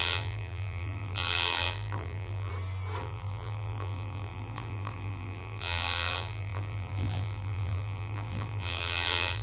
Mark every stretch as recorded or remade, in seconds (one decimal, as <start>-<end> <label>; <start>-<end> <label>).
0.0-2.5 remade; 2.5-3.0 recorded; 3.0-9.4 remade